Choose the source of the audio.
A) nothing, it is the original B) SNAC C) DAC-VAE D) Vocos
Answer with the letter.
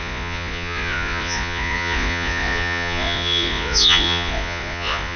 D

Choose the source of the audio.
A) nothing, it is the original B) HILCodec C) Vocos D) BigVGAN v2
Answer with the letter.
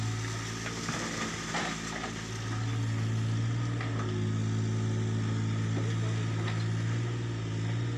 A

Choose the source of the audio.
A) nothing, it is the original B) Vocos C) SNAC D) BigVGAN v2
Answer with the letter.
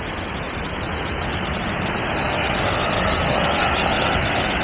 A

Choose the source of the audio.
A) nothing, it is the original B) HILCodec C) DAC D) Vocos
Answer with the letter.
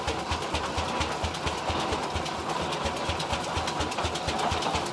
A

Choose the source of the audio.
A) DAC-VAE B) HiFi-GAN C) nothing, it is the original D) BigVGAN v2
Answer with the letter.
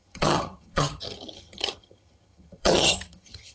B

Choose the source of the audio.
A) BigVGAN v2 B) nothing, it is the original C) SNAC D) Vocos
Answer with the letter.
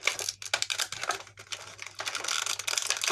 B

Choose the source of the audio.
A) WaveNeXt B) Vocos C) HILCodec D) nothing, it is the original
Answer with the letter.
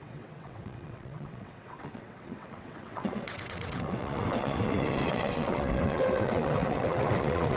A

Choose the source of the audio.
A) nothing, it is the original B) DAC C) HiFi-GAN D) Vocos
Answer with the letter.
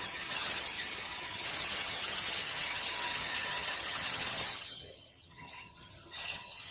C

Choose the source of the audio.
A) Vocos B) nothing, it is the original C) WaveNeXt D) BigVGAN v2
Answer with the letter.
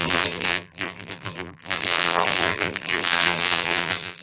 D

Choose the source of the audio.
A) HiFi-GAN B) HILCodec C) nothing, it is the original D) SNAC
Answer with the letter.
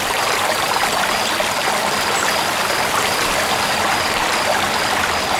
C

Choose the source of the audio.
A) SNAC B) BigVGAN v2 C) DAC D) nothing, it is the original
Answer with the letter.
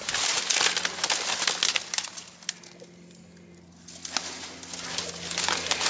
D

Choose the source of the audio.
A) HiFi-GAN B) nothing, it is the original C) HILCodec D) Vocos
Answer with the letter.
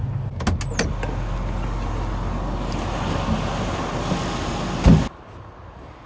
B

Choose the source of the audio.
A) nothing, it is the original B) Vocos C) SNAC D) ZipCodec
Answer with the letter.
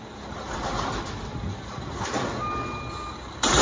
A